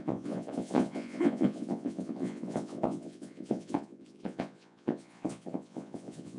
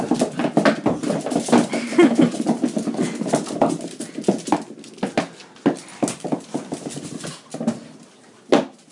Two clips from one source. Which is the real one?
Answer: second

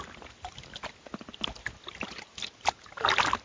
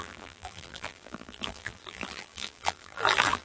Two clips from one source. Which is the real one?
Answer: first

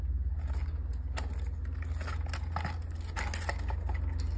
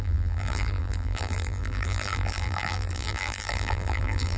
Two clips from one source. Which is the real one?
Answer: first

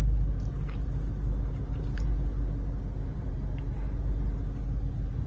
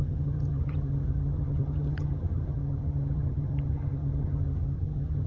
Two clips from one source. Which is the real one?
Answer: first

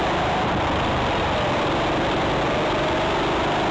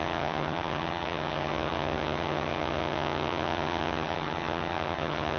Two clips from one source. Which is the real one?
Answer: first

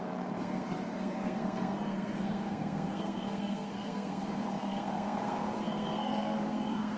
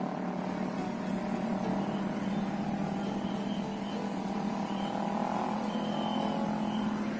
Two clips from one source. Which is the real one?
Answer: second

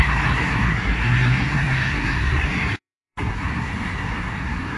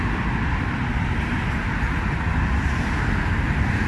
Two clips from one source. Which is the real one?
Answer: second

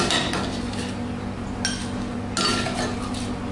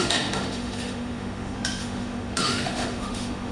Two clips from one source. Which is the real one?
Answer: first